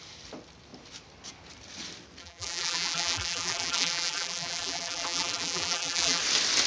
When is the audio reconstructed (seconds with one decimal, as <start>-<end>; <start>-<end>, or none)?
2.2-6.2